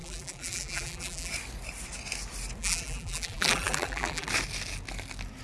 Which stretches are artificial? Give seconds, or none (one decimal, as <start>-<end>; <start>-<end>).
0.0-1.3; 2.6-4.3